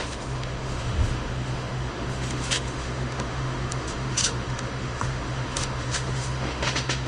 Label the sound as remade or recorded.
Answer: remade